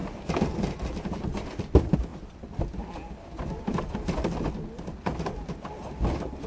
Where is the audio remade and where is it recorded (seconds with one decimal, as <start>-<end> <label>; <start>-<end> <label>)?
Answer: 0.0-6.5 recorded